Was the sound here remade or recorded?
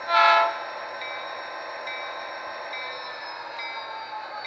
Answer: recorded